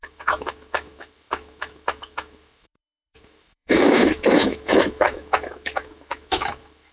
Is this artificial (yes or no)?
yes